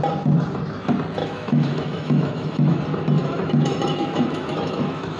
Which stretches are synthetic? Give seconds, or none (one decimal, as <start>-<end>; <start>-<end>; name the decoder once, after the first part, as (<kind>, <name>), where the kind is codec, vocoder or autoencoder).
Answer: 1.2-2.8 (autoencoder, DAC-VAE); 3.2-5.2